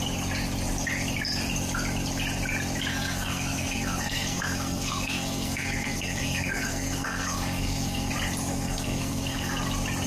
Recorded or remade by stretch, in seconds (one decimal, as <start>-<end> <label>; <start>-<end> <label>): 0.0-2.9 recorded; 2.9-8.1 remade; 8.1-8.5 recorded; 8.5-9.6 remade; 9.6-10.1 recorded